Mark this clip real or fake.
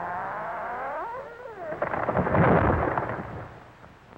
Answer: real